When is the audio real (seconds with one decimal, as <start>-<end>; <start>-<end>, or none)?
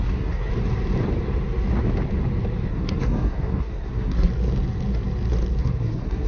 0.5-2.7; 4.3-5.6